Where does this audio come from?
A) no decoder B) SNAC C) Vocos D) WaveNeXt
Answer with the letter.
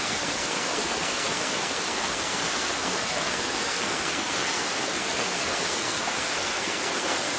B